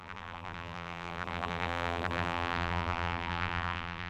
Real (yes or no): no